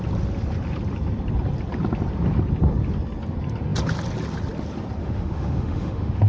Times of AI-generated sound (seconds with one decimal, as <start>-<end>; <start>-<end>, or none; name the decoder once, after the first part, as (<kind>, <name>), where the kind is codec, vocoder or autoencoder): 5.0-6.3 (autoencoder, DAC-VAE)